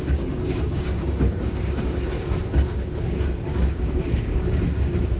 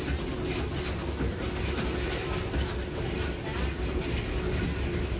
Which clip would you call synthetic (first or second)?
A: first